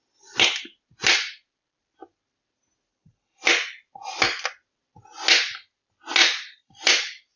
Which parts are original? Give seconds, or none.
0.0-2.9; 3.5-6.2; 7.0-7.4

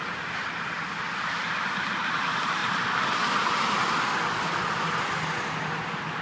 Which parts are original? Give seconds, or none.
0.0-6.2

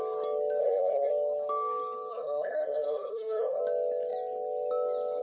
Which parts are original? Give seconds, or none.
0.0-0.6; 1.1-2.1; 3.6-5.2

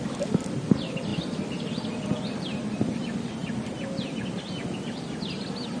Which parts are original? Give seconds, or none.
3.4-5.2